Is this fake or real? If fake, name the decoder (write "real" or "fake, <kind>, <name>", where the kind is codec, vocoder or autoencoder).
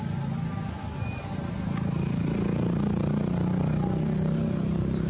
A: real